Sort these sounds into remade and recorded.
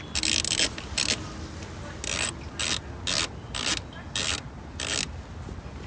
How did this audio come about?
recorded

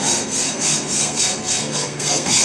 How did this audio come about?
remade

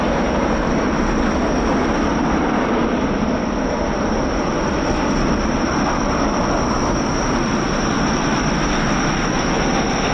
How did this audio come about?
recorded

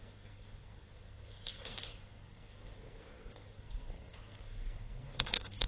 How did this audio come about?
remade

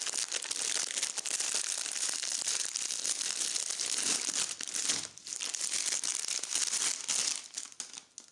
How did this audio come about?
recorded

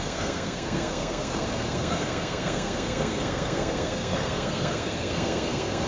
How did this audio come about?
remade